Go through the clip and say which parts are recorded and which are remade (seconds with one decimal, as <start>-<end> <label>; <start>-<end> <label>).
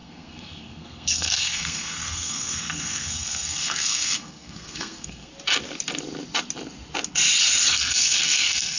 0.0-5.3 remade; 5.3-7.9 recorded; 7.9-8.8 remade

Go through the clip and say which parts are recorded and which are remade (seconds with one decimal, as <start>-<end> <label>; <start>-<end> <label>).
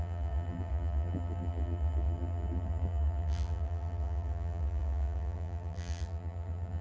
0.0-6.8 remade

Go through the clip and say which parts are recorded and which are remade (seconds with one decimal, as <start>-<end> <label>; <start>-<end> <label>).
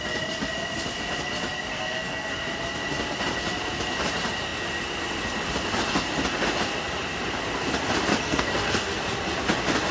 0.0-1.7 recorded; 1.7-2.3 remade; 2.3-8.1 recorded; 8.1-9.0 remade; 9.0-9.9 recorded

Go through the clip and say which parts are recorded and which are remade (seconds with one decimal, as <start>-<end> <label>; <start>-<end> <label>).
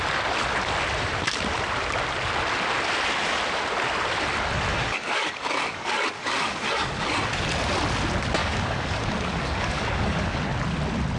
0.0-4.7 recorded; 4.7-7.1 remade; 7.1-8.4 recorded; 8.4-10.4 remade; 10.4-11.2 recorded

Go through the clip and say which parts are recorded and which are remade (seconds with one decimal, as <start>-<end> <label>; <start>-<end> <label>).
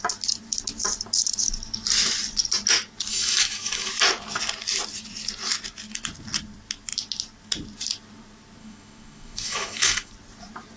0.0-3.1 recorded; 3.1-3.9 remade; 3.9-8.6 recorded; 8.6-10.1 remade; 10.1-10.8 recorded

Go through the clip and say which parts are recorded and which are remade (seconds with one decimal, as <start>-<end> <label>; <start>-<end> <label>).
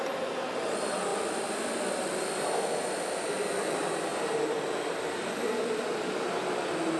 0.0-7.0 recorded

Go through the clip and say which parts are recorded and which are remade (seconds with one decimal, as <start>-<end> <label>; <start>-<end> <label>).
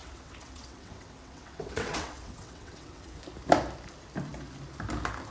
0.0-3.2 remade; 3.2-5.3 recorded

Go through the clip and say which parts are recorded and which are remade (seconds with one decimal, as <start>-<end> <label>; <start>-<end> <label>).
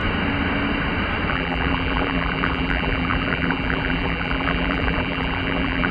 0.0-1.3 recorded; 1.3-5.9 remade